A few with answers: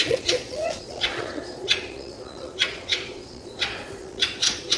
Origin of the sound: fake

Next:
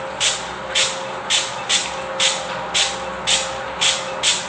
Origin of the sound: real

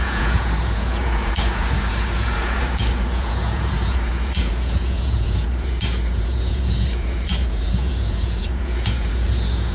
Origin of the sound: fake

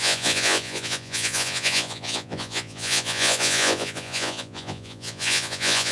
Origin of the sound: fake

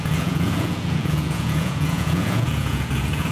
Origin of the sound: fake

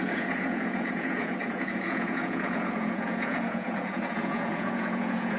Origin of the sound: fake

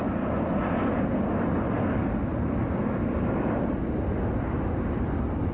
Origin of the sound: real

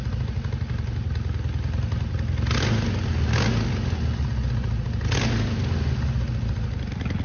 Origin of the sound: real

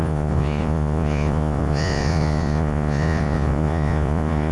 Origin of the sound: fake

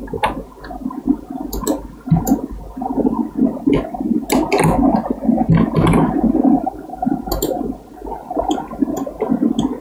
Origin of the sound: real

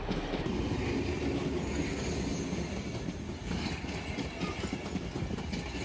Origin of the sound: real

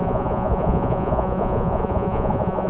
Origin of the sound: fake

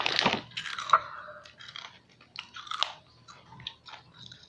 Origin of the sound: real